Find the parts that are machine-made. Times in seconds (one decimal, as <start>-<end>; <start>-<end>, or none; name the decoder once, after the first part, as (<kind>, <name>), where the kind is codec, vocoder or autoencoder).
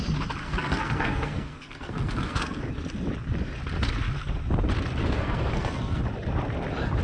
0.4-2.6 (codec, SNAC); 5.0-6.0